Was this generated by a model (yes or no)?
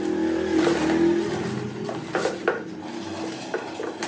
no